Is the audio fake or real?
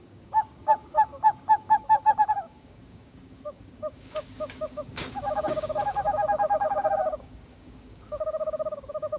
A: fake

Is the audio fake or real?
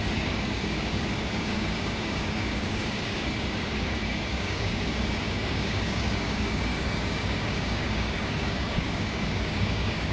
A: fake